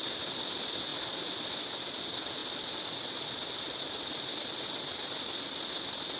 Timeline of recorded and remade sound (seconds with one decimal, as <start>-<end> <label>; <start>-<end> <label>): 0.0-6.2 recorded